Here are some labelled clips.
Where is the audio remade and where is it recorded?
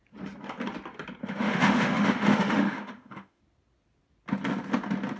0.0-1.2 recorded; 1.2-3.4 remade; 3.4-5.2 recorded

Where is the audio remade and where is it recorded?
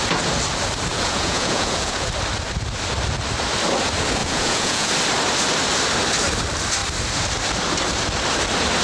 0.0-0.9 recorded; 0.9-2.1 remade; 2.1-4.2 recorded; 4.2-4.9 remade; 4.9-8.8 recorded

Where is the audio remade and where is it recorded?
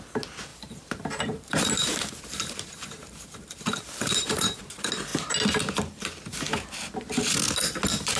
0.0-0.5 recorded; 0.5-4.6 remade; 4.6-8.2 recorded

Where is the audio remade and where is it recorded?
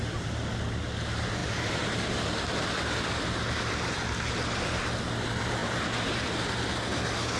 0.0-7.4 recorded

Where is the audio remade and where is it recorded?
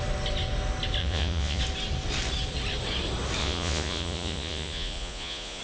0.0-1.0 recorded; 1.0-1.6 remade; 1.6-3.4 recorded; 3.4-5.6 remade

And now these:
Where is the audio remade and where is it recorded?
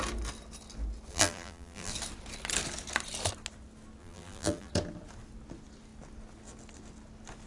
0.0-1.1 recorded; 1.1-1.9 remade; 1.9-4.0 recorded; 4.0-4.7 remade; 4.7-7.5 recorded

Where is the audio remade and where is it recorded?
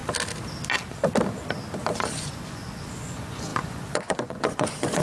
0.0-2.1 recorded; 2.1-5.0 remade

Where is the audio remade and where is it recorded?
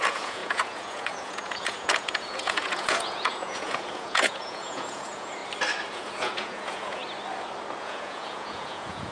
0.0-5.4 remade; 5.4-5.9 recorded; 5.9-7.0 remade; 7.0-7.8 recorded; 7.8-9.1 remade